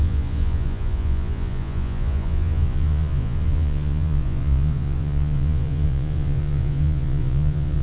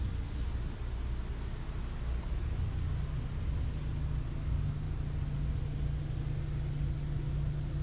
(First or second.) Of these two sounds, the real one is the second